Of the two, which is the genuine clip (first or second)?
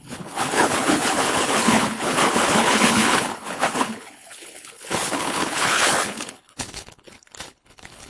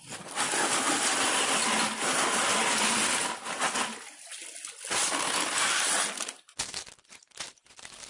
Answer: second